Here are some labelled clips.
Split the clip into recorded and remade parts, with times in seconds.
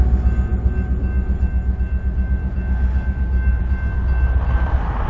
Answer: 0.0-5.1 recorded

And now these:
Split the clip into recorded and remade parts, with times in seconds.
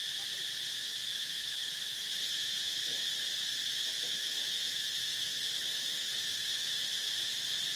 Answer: 0.0-0.8 recorded; 0.8-3.1 remade; 3.1-3.7 recorded; 3.7-7.3 remade; 7.3-7.8 recorded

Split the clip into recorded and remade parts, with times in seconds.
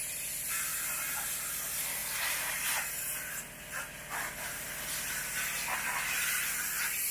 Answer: 0.0-7.1 recorded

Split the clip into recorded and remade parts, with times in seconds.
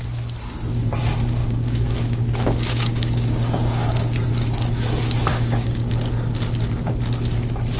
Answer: 0.0-1.4 recorded; 1.4-3.9 remade; 3.9-5.3 recorded; 5.3-5.9 remade; 5.9-7.8 recorded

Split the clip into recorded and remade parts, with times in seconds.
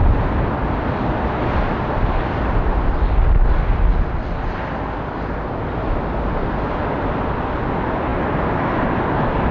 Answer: 0.0-9.5 recorded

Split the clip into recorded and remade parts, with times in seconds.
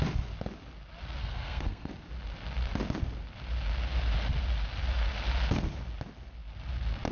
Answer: 0.0-1.2 recorded; 1.2-1.9 remade; 1.9-7.1 recorded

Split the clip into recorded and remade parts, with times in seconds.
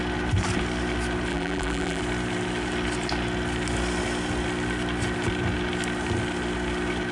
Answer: 0.0-1.3 recorded; 1.3-2.0 remade; 2.0-7.1 recorded